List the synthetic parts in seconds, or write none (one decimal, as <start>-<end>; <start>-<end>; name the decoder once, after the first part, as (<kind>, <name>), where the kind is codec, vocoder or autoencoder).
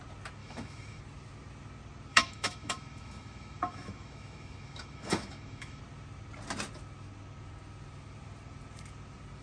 0.4-1.0 (autoencoder, DAC-VAE); 2.1-5.8